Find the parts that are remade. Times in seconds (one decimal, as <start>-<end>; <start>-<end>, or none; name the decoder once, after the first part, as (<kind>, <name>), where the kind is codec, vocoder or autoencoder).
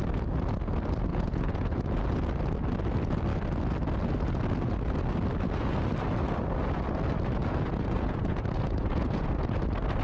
1.1-1.8 (vocoder, Vocos); 7.5-9.3